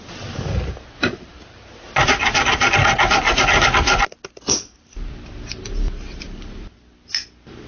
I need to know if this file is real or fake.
fake